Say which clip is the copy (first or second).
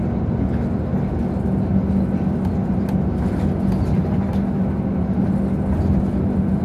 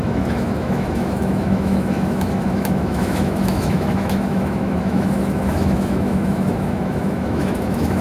second